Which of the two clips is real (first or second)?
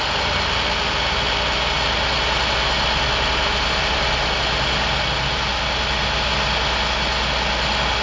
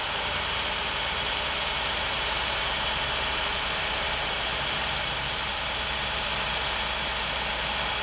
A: first